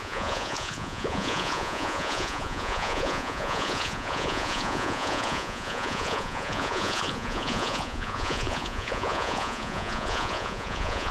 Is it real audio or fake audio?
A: fake